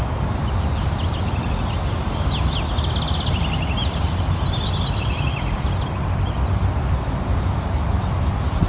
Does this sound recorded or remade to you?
recorded